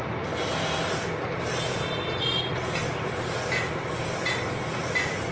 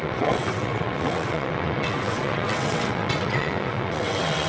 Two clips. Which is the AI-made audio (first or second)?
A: second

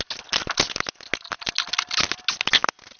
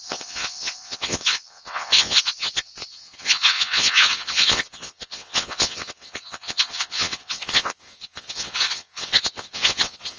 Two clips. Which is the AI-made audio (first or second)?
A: second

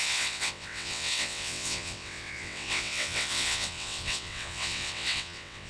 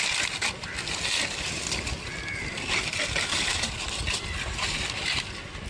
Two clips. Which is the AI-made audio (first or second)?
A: first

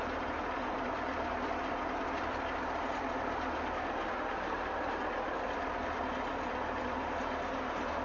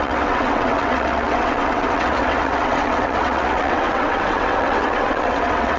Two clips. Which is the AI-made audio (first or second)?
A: second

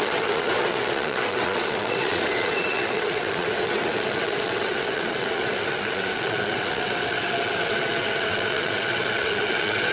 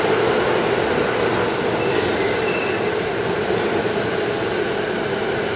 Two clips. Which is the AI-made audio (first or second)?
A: first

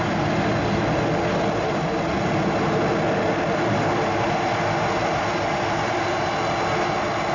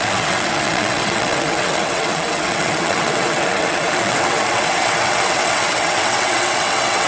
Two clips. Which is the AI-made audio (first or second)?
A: second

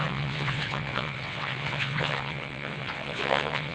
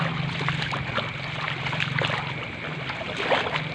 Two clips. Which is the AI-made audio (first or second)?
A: first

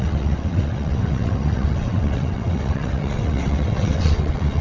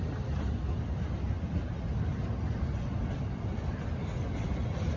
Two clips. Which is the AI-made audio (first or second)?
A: first